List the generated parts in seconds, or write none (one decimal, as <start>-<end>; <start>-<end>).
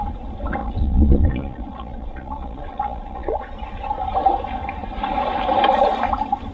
0.6-3.9